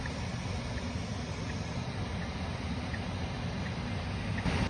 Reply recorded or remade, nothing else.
recorded